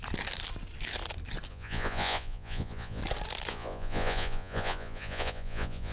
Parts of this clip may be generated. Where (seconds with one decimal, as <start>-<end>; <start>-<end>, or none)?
1.5-3.0; 3.5-5.9